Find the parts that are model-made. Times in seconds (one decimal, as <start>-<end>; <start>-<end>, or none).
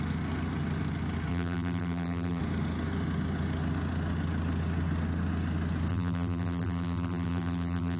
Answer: 1.3-2.4; 5.9-8.0